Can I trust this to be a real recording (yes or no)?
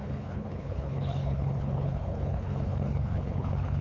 no